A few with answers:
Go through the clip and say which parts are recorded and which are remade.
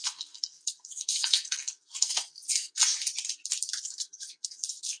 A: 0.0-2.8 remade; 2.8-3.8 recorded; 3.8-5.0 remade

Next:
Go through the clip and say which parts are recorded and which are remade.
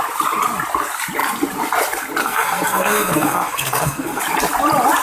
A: 0.0-2.2 recorded; 2.2-4.2 remade; 4.2-5.0 recorded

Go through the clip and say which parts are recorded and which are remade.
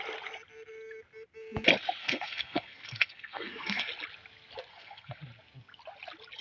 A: 0.0-2.0 recorded; 2.0-3.9 remade; 3.9-4.7 recorded; 4.7-5.2 remade; 5.2-6.4 recorded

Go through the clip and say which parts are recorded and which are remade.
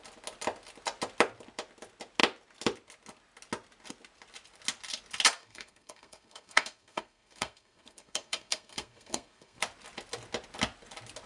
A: 0.0-5.4 recorded; 5.4-9.6 remade; 9.6-11.3 recorded